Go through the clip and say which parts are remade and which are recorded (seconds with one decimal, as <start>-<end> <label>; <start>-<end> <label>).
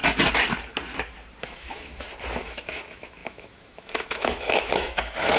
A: 0.0-1.4 recorded; 1.4-1.9 remade; 1.9-2.4 recorded; 2.4-5.4 remade